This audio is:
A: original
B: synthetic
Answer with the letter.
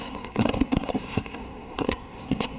B